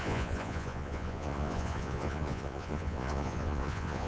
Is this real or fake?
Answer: fake